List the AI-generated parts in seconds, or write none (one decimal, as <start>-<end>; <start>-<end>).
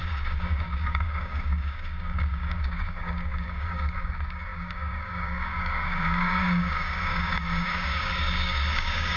0.0-9.2